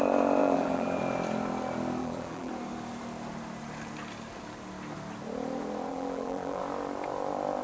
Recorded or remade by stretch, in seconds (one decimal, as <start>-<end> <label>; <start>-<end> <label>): 0.0-0.4 recorded; 0.4-1.0 remade; 1.0-2.0 recorded; 2.0-2.5 remade; 2.5-5.9 recorded; 5.9-6.6 remade; 6.6-7.6 recorded

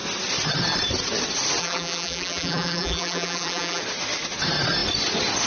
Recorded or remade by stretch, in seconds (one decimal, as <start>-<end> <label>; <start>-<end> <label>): 0.0-1.6 recorded; 1.6-3.8 remade; 3.8-5.5 recorded

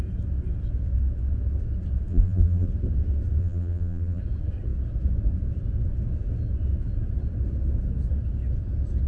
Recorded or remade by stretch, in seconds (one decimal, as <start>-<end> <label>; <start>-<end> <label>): 0.0-2.1 recorded; 2.1-2.7 remade; 2.7-3.4 recorded; 3.4-4.2 remade; 4.2-9.1 recorded

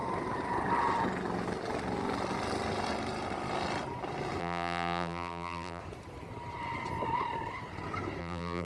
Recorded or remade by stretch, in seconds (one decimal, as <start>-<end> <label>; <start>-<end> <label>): 0.0-4.4 recorded; 4.4-5.8 remade; 5.8-8.2 recorded; 8.2-8.6 remade

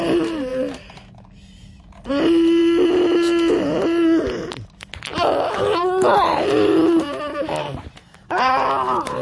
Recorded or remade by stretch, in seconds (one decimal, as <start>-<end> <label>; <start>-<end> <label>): 0.0-9.2 recorded